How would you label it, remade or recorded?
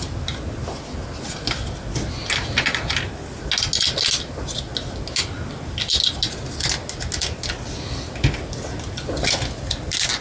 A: recorded